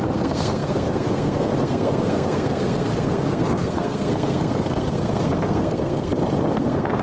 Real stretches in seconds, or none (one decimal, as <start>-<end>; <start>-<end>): 6.1-6.6